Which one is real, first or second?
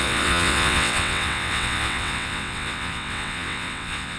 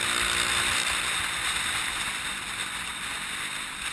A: second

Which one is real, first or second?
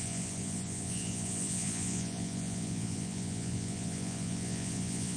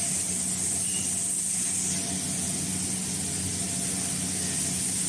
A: second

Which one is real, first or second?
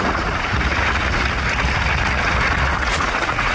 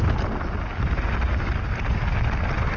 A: second